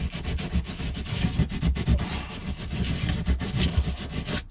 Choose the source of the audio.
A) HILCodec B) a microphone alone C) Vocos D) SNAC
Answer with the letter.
B